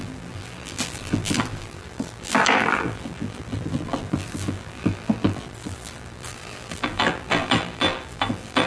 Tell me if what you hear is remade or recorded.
remade